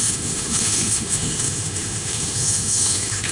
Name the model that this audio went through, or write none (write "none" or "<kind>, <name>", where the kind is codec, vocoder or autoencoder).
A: autoencoder, DAC-VAE